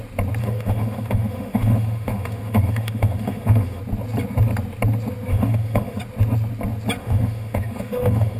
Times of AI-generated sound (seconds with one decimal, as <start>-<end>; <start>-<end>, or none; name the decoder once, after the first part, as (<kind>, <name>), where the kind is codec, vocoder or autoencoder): 0.4-3.8 (autoencoder, DAC-VAE); 5.3-6.0; 7.0-8.4

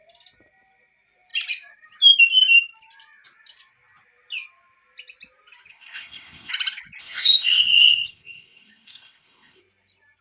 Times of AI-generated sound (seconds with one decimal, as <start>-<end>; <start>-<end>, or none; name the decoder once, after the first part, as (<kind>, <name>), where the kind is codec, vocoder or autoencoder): 5.7-6.5 (codec, ZipCodec); 7.0-9.6

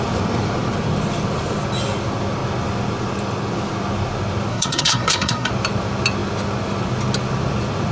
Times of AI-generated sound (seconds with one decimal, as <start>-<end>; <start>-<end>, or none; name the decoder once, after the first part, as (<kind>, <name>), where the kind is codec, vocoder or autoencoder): 4.5-5.5 (codec, SNAC)

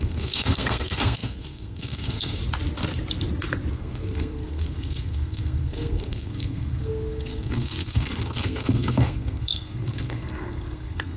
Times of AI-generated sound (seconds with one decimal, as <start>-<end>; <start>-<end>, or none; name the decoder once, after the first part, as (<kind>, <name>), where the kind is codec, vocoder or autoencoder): 0.0-2.4 (codec, SNAC); 3.7-11.2

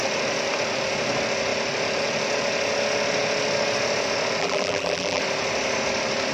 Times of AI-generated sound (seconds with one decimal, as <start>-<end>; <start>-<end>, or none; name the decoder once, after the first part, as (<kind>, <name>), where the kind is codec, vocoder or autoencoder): 4.4-5.2 (vocoder, BigVGAN v2)

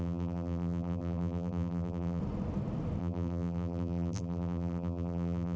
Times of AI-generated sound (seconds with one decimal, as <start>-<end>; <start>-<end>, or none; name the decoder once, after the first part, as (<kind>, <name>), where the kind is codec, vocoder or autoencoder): 0.0-2.2 (vocoder, BigVGAN v2); 3.0-5.6

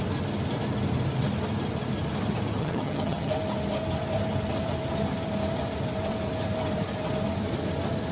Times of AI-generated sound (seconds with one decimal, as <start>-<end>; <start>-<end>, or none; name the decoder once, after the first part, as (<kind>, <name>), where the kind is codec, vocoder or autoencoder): 2.6-3.3 (vocoder, HiFi-GAN)

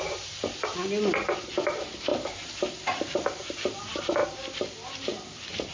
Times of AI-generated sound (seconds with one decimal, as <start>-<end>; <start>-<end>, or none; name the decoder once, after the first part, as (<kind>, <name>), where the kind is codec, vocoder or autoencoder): 0.0-0.7 (vocoder, BigVGAN v2); 1.3-4.2